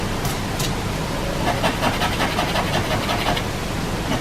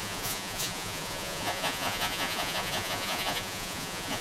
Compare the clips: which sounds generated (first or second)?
second